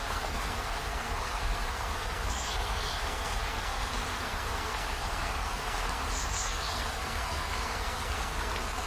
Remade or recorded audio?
remade